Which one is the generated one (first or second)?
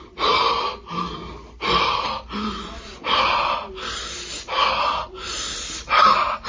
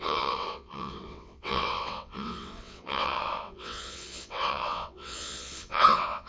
second